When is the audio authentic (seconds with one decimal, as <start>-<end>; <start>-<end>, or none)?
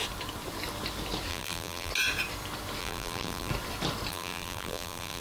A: 0.0-1.3; 1.9-2.8; 3.5-4.1